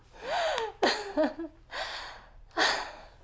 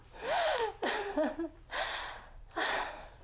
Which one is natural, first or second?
first